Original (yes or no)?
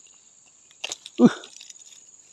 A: yes